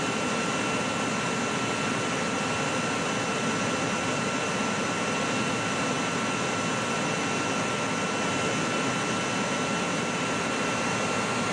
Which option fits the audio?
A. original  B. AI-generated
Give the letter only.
A